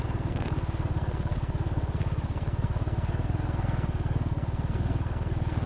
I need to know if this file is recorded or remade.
remade